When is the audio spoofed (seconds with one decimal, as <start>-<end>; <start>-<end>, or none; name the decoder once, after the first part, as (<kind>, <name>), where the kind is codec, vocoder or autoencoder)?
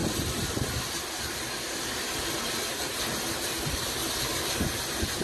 3.0-4.0 (vocoder, BigVGAN v2); 4.6-5.2